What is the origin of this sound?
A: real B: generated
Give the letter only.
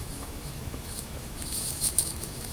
B